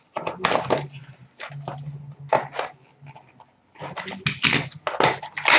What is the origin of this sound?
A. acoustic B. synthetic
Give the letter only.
A